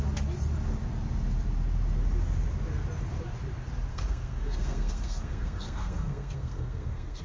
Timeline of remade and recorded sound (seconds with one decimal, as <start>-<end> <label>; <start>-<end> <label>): 0.0-3.9 recorded; 3.9-7.2 remade